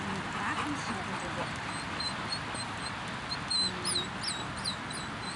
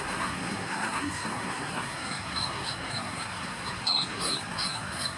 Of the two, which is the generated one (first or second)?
second